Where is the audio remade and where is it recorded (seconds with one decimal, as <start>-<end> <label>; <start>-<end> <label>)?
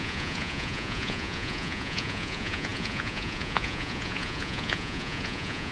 0.0-5.7 remade